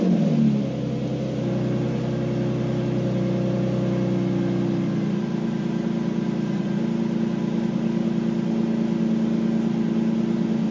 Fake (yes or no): no